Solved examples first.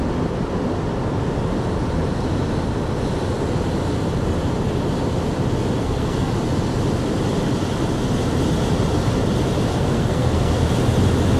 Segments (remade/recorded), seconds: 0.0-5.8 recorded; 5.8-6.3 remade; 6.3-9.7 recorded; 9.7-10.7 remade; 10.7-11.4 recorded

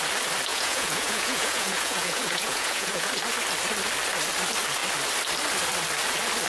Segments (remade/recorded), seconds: 0.0-0.5 recorded; 0.5-3.1 remade; 3.1-6.5 recorded